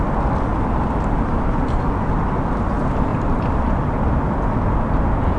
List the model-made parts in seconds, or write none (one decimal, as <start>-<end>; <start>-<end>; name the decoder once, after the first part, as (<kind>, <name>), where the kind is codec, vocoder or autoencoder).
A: 0.5-2.2 (vocoder, BigVGAN v2); 3.1-3.9